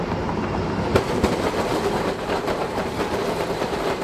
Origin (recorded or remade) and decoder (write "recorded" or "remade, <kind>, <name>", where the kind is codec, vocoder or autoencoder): remade, vocoder, BigVGAN v2